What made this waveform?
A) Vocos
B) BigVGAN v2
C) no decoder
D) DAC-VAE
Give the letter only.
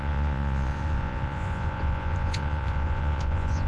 A